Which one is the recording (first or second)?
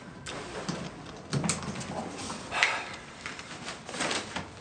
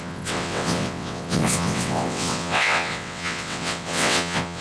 first